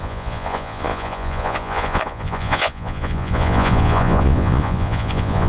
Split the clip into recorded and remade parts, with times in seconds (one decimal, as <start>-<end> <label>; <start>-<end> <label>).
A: 0.0-5.5 remade